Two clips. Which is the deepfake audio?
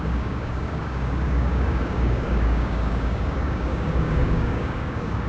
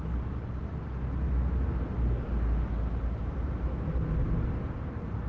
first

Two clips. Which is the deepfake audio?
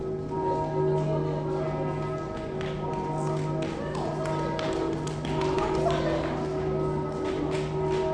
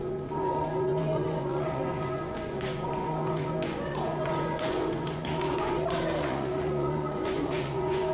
second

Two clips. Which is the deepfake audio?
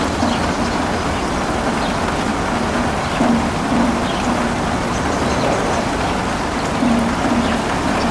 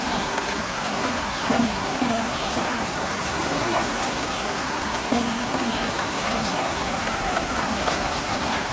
second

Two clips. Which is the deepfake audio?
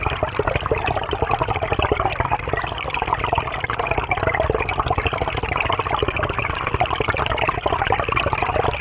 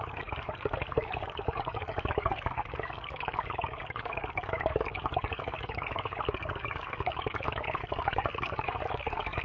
second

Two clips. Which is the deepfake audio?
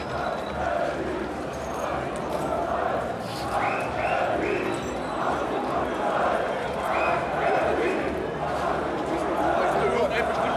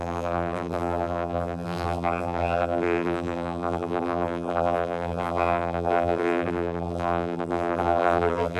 second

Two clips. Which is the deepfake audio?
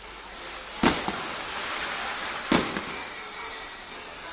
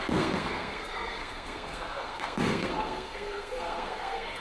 second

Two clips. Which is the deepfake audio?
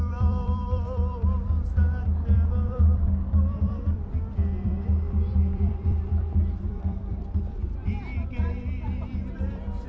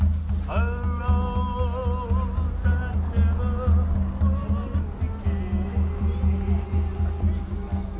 first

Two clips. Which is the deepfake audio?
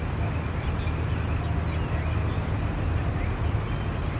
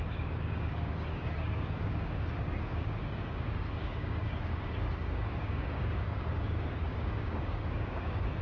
second